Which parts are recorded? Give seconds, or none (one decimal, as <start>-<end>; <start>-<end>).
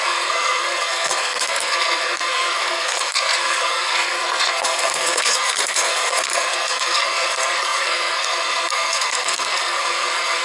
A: none